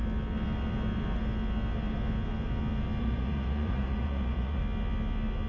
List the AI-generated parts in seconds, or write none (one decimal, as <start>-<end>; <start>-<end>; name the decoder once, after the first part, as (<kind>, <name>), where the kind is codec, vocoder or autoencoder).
3.0-4.6 (vocoder, Vocos)